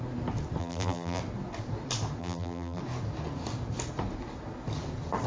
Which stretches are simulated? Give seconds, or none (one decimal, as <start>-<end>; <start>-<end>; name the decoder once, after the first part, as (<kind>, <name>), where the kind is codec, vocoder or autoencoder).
0.6-1.2 (vocoder, BigVGAN v2); 2.2-2.8